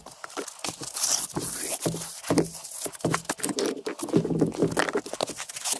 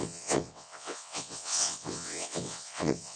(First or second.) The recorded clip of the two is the first